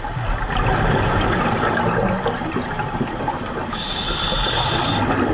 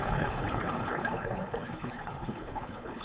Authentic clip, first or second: first